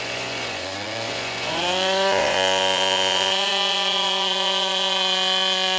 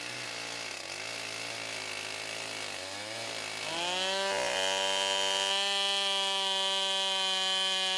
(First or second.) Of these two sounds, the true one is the second